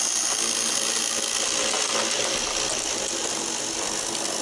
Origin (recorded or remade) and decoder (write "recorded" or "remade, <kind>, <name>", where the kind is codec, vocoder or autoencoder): recorded